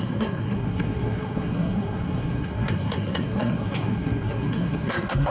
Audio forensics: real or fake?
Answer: fake